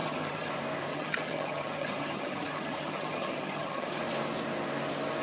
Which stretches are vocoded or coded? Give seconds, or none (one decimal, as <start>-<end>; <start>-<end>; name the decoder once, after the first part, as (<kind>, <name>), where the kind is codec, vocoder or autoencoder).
0.0-0.5 (vocoder, HiFi-GAN); 0.9-4.0